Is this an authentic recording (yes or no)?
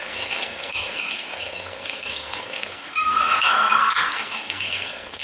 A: no